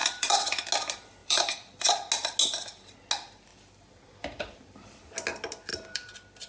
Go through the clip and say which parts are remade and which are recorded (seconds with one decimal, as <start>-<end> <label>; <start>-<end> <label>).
0.0-0.7 remade; 0.7-1.2 recorded; 1.2-1.8 remade; 1.8-3.5 recorded; 3.5-5.0 remade; 5.0-5.7 recorded; 5.7-6.5 remade